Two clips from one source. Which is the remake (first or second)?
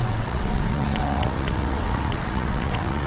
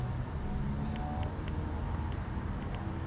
first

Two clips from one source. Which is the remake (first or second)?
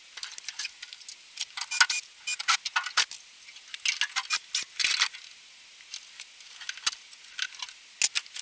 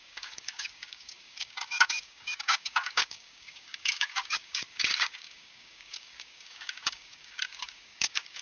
second